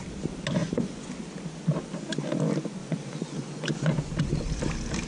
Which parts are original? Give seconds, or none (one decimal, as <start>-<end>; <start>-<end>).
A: 0.0-0.6; 1.1-2.8; 4.1-5.1